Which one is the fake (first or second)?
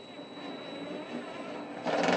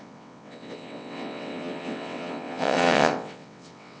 second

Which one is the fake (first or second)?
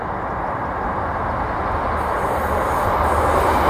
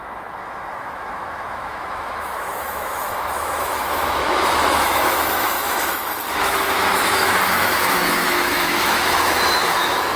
second